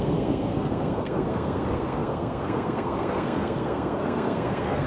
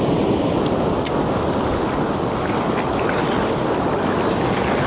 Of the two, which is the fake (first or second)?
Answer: first